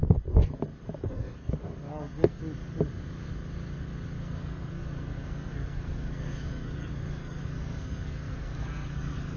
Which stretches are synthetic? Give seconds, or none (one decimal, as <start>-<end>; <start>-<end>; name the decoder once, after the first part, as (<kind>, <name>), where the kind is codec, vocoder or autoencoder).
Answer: 1.0-2.4 (codec, SNAC); 4.2-9.4